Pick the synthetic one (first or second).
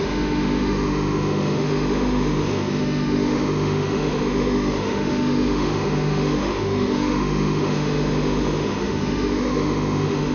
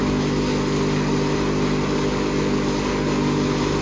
first